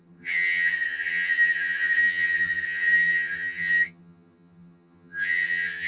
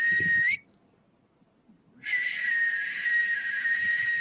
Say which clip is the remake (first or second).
first